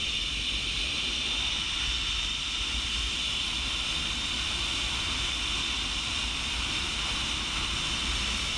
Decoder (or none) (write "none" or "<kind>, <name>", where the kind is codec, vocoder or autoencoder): none